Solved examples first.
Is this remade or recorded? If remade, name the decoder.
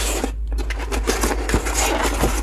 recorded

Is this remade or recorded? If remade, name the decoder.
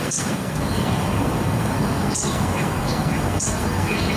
remade, codec, SNAC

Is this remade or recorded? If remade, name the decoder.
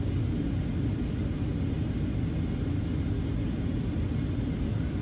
recorded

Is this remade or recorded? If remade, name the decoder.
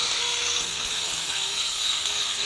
remade, codec, SNAC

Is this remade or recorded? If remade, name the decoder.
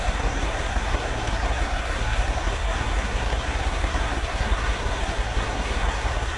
remade, codec, SNAC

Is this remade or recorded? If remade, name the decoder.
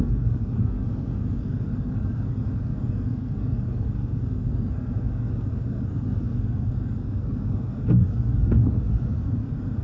remade, codec, SNAC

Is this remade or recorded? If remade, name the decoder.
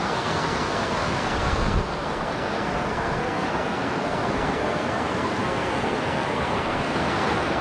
remade, codec, SNAC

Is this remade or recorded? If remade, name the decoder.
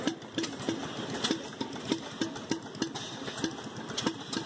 recorded